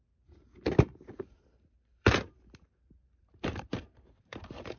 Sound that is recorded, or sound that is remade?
remade